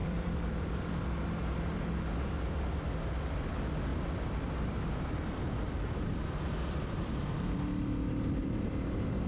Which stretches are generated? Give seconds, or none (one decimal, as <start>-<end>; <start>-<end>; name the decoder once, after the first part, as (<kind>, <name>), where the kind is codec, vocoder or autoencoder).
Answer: 0.0-3.5 (vocoder, BigVGAN v2); 3.9-8.3